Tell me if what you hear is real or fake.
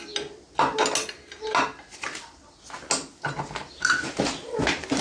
real